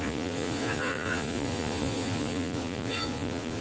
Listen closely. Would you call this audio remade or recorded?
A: remade